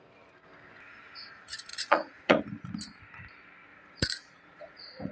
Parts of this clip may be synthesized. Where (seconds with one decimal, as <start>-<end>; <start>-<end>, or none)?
1.7-2.4; 3.7-5.1